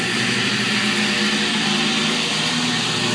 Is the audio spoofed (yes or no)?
yes